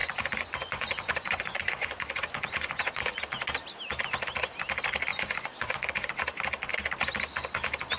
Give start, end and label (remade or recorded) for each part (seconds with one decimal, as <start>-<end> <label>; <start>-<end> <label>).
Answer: 0.0-3.2 remade; 3.2-5.1 recorded; 5.1-6.1 remade; 6.1-8.0 recorded